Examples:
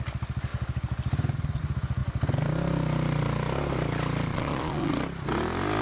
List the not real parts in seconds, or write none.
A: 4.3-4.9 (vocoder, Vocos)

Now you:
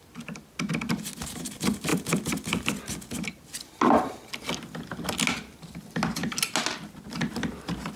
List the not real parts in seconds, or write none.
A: none

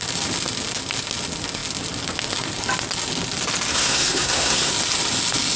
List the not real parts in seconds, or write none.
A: 3.7-4.7 (codec, SNAC)

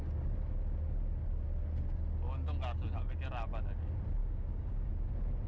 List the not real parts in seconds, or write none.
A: 4.2-4.9 (codec, DAC)